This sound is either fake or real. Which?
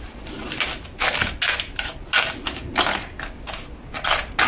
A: real